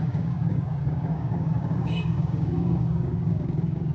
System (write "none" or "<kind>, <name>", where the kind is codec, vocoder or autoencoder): codec, DAC